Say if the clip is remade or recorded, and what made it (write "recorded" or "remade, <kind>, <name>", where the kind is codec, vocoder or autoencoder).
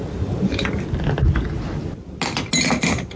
recorded